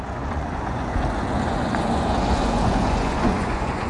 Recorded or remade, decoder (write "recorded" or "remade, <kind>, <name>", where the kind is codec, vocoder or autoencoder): remade, vocoder, Vocos